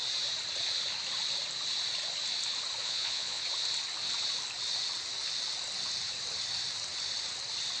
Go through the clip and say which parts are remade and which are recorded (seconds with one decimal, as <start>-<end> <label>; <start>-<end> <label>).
0.0-2.8 recorded; 2.8-3.4 remade; 3.4-7.8 recorded